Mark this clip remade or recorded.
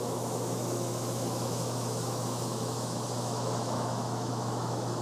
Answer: remade